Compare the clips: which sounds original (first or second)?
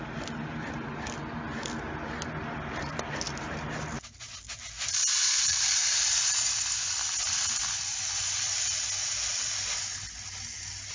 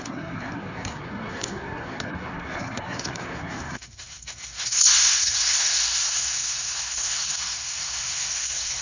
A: first